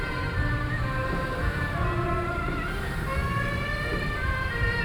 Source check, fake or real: fake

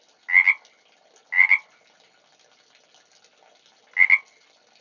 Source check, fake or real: real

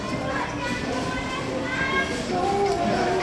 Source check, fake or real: real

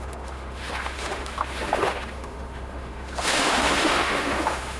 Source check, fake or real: fake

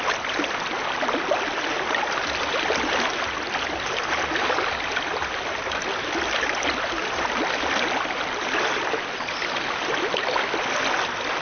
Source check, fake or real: real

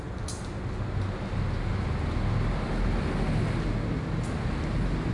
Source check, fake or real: real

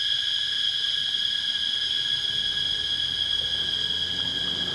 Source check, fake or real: real